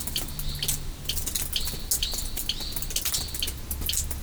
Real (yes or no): yes